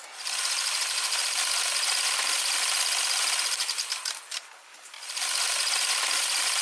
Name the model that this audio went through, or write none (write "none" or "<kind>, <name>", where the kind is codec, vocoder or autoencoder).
none